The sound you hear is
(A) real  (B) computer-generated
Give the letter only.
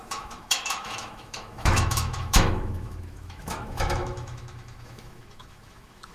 B